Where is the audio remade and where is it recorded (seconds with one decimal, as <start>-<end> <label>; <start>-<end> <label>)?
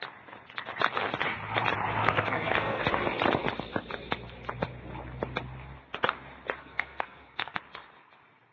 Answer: 0.0-2.0 recorded; 2.0-2.8 remade; 2.8-6.6 recorded; 6.6-7.6 remade; 7.6-8.5 recorded